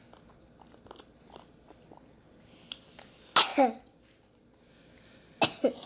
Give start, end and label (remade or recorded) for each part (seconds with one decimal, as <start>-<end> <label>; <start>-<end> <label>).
0.0-5.9 recorded